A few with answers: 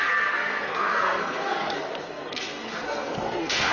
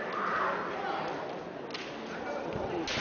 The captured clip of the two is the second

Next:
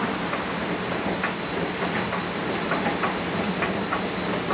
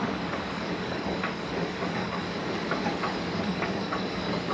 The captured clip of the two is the first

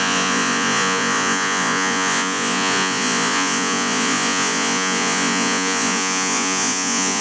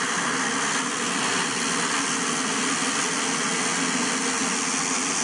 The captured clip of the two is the second